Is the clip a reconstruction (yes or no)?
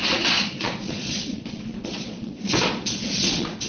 yes